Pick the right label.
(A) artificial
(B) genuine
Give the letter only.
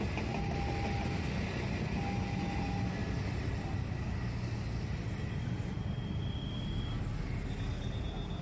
B